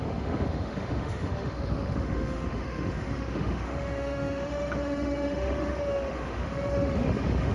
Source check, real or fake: fake